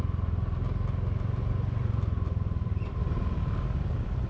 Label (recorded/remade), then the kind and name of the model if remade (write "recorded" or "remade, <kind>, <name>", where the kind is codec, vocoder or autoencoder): recorded